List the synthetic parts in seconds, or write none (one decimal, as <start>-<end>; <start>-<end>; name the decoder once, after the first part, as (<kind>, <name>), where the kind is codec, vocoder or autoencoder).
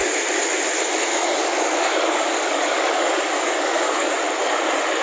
1.1-4.1 (codec, DAC)